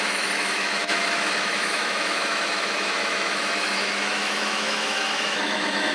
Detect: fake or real fake